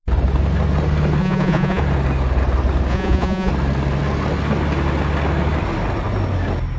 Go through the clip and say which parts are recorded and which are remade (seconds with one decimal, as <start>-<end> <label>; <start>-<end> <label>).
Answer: 0.0-1.2 recorded; 1.2-1.8 remade; 1.8-2.9 recorded; 2.9-3.5 remade; 3.5-6.8 recorded